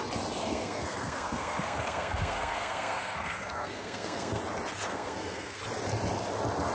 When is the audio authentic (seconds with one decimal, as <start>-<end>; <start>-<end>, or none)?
0.0-0.4; 4.4-4.9; 5.6-6.7